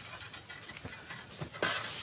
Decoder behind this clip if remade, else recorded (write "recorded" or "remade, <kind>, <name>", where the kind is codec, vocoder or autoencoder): recorded